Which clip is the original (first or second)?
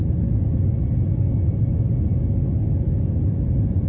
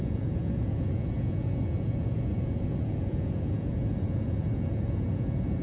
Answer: first